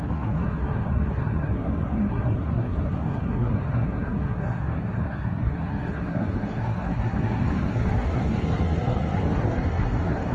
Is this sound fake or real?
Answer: fake